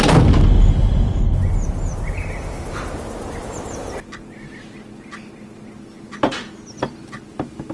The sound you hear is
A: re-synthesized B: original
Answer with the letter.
B